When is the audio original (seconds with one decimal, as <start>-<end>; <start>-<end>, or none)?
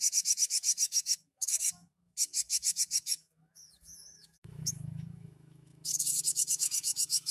none